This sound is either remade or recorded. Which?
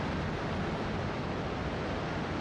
recorded